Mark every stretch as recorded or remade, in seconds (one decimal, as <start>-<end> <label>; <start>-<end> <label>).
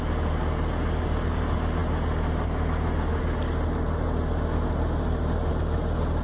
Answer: 0.0-6.2 recorded